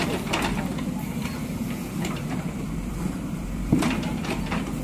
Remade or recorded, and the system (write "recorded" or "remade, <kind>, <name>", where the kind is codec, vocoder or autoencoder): remade, vocoder, BigVGAN v2